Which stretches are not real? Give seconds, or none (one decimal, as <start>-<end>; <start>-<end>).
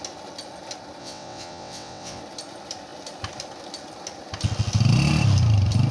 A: 1.0-2.2